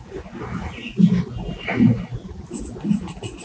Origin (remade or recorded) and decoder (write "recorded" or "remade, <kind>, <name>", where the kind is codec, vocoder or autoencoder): recorded